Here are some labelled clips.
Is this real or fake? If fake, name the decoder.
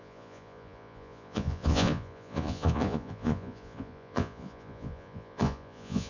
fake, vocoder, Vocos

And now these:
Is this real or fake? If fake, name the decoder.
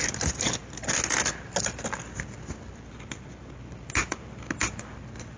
real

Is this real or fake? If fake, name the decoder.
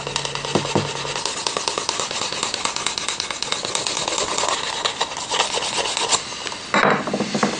real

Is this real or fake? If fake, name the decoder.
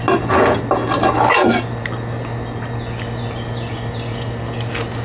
real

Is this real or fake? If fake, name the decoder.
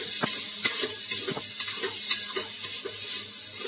real